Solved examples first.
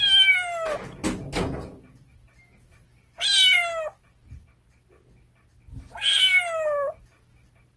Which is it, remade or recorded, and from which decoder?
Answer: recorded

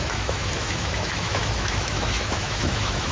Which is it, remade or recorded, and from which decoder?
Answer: remade, autoencoder, DAC-VAE